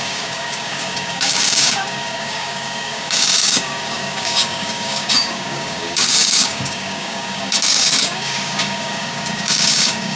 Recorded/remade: remade